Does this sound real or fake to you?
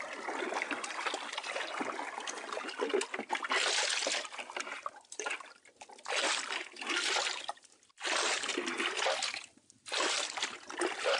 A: real